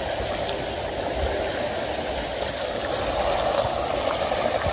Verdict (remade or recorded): recorded